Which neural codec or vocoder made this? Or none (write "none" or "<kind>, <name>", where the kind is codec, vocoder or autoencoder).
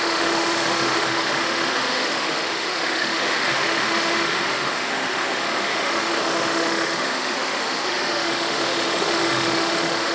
autoencoder, DAC-VAE